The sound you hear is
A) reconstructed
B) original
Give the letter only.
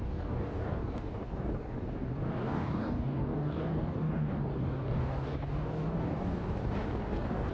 A